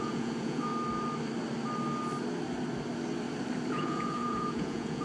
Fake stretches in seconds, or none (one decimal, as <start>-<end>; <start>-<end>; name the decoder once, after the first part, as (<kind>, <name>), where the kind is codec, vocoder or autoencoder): 0.0-0.7 (vocoder, Vocos); 3.7-5.0